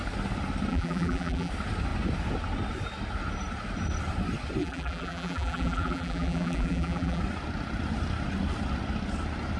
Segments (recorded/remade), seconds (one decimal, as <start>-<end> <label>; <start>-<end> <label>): 0.0-0.7 recorded; 0.7-1.5 remade; 1.5-4.6 recorded; 4.6-7.2 remade; 7.2-9.6 recorded